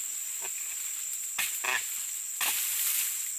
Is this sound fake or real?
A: real